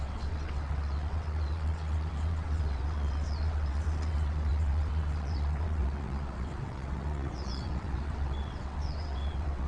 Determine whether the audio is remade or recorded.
remade